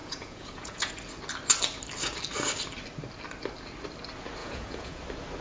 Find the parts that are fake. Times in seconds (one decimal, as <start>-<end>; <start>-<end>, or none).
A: 0.0-0.9; 4.4-5.0